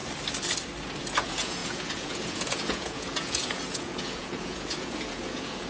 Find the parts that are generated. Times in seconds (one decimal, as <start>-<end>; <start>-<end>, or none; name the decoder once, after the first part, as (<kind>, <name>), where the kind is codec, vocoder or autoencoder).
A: 1.0-5.7 (vocoder, Vocos)